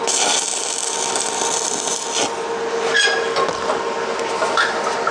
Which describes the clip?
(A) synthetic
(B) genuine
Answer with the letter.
B